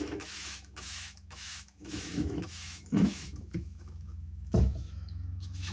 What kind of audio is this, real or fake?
fake